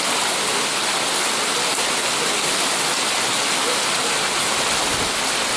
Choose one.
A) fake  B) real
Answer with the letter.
B